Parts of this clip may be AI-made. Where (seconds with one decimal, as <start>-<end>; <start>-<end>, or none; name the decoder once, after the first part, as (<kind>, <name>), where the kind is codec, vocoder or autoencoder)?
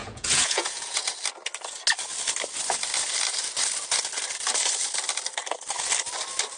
0.0-1.1 (vocoder, Vocos)